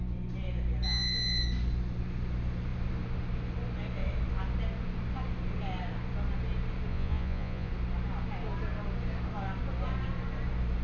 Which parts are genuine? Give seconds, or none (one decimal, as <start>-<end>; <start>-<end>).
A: 0.0-6.9; 7.7-10.8